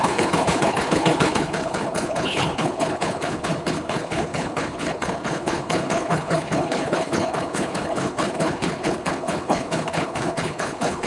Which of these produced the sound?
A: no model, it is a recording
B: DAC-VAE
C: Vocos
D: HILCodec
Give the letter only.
D